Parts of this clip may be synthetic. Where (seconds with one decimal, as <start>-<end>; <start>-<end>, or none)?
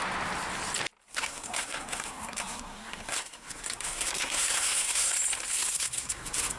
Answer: 1.1-5.1; 5.5-6.6